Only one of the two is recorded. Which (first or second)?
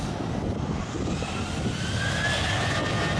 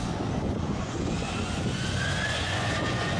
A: first